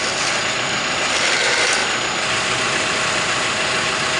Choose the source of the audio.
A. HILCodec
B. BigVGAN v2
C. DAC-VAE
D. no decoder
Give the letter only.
D